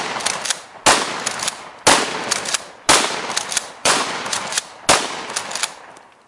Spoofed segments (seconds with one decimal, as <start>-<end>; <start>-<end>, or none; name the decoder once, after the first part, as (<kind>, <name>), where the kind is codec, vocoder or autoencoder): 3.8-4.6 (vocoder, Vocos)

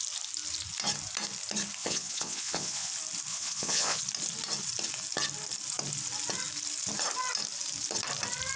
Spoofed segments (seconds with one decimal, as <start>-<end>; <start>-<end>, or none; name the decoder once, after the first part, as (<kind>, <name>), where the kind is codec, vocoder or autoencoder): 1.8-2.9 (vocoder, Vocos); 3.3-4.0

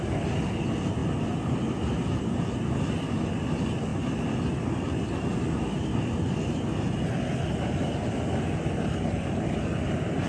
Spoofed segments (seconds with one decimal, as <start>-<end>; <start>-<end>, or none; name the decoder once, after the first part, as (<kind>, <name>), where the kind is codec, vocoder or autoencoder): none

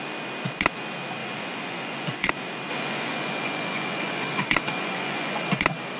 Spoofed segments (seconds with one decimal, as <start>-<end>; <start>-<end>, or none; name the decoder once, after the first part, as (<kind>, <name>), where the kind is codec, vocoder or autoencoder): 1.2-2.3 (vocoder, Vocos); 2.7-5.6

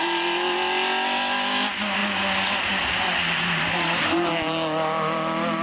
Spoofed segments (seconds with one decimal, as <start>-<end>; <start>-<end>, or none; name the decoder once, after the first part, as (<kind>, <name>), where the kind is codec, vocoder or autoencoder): none

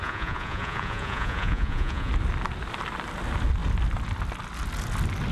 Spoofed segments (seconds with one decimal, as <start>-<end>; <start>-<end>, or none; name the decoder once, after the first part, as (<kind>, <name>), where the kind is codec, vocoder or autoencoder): 0.0-2.1 (vocoder, Vocos)

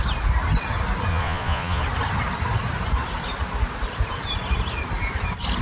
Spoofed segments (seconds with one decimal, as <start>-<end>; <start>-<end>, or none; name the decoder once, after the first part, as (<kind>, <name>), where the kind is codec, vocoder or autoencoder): 1.1-1.8 (vocoder, Vocos)

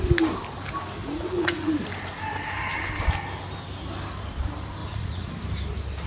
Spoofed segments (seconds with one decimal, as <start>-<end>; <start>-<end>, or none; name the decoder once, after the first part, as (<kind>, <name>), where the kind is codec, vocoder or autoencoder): 1.0-1.7 (vocoder, Vocos); 4.8-5.3